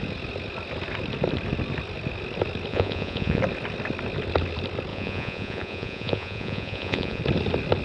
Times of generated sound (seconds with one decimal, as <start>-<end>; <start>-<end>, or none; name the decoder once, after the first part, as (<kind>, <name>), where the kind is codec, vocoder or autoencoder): 2.7-3.4 (vocoder, Vocos); 4.9-7.2